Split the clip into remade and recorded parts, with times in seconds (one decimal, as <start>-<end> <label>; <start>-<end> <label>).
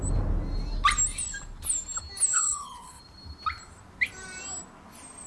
0.0-2.3 recorded; 2.3-3.0 remade; 3.0-5.3 recorded